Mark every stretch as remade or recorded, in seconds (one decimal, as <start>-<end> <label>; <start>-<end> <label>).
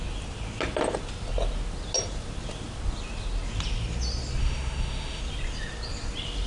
0.0-4.4 recorded; 4.4-5.2 remade; 5.2-6.5 recorded